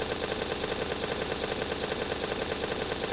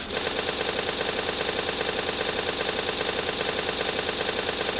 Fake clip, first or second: first